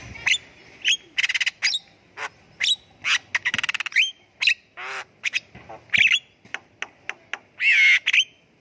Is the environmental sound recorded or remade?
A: recorded